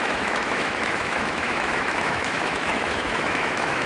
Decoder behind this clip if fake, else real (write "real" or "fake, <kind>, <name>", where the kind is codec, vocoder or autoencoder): fake, autoencoder, DAC-VAE